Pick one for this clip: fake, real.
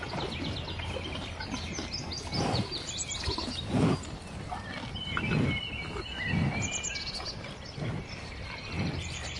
real